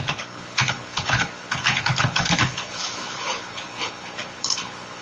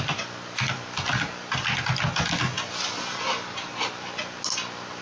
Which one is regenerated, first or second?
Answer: first